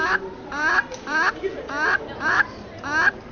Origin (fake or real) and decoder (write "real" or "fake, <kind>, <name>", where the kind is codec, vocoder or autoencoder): real